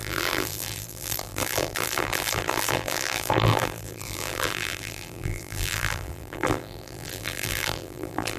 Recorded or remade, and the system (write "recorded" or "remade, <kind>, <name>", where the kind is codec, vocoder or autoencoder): remade, vocoder, BigVGAN v2